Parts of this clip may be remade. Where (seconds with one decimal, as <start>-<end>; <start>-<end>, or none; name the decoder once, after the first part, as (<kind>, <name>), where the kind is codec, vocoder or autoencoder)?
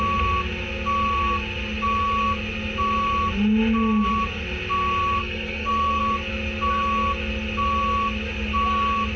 5.2-6.0 (codec, SNAC)